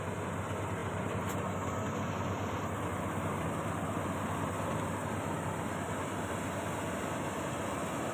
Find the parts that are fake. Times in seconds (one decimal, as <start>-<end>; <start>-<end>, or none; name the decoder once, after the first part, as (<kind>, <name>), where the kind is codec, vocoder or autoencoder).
none